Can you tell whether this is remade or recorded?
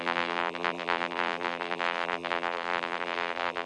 remade